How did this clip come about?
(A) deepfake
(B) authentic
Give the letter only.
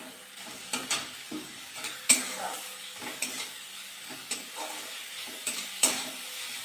A